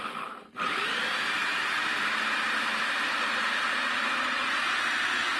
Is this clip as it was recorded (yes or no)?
yes